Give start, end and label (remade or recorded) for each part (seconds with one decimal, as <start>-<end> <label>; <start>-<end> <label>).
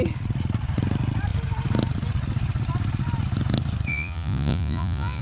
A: 0.0-3.9 recorded; 3.9-5.2 remade